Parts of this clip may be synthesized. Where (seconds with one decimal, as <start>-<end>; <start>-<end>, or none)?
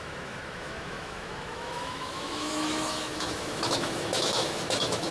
0.0-5.1